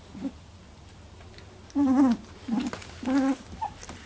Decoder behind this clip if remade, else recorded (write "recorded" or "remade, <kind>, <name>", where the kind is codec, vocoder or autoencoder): recorded